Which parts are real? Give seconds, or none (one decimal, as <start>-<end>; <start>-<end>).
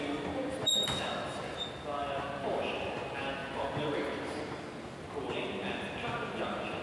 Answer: 0.0-2.0; 3.0-3.4; 4.4-6.8